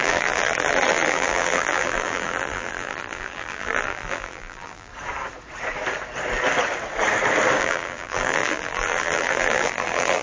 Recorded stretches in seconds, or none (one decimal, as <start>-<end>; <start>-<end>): 4.9-7.6